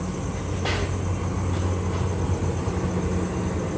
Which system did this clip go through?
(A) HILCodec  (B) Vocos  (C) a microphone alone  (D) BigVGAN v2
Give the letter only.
C